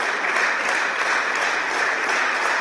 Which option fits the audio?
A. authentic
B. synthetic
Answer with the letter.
A